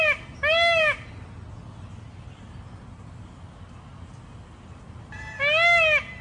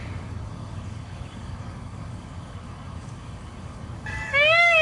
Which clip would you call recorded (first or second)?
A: first